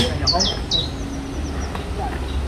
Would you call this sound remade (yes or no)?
no